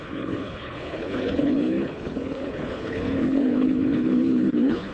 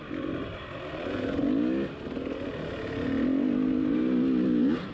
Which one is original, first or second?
second